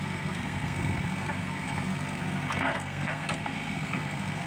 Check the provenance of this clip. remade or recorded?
remade